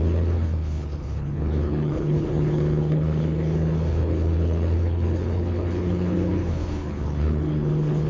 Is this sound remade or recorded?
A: remade